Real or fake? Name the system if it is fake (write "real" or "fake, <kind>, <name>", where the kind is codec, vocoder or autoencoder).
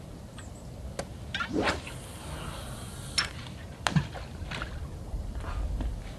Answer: real